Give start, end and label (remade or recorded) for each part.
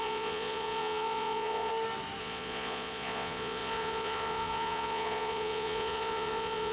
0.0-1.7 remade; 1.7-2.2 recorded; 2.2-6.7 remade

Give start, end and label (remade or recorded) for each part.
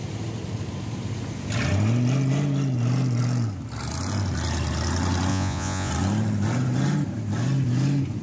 0.0-5.3 recorded; 5.3-5.9 remade; 5.9-8.2 recorded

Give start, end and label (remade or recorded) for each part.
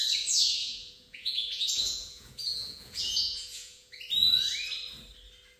0.0-0.6 recorded; 0.6-4.0 remade; 4.0-5.6 recorded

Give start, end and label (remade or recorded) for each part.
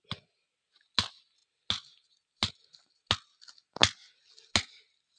0.0-5.2 recorded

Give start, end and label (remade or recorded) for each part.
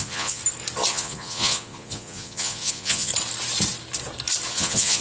0.0-0.4 remade; 0.4-0.9 recorded; 0.9-3.1 remade; 3.1-4.5 recorded; 4.5-5.0 remade